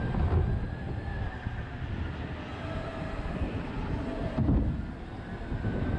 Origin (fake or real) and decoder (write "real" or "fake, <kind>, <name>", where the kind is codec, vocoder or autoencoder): real